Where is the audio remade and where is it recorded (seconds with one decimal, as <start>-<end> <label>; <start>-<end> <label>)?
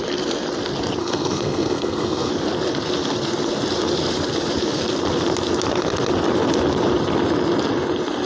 0.0-1.0 recorded; 1.0-2.3 remade; 2.3-8.3 recorded